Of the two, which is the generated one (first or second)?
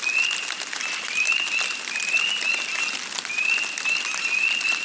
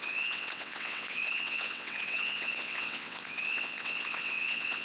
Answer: second